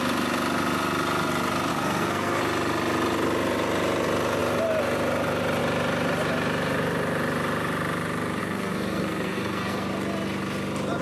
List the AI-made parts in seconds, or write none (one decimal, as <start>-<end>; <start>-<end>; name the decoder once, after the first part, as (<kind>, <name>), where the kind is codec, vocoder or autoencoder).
1.7-2.4 (codec, SNAC); 8.4-9.9